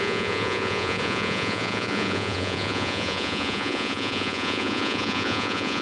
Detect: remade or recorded remade